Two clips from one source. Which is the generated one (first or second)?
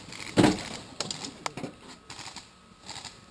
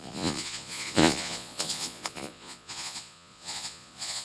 second